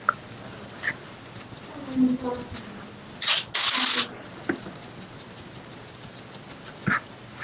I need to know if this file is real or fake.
real